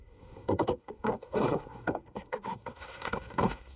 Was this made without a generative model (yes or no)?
no